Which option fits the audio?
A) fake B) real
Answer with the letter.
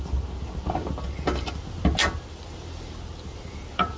B